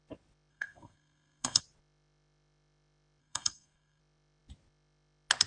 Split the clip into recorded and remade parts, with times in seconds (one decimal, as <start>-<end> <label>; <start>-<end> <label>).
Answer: 0.0-0.5 recorded; 0.5-1.6 remade; 1.6-3.2 recorded; 3.2-4.0 remade; 4.0-5.5 recorded